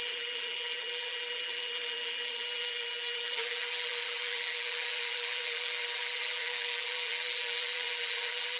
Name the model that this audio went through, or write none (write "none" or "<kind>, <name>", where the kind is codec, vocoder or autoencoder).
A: vocoder, BigVGAN v2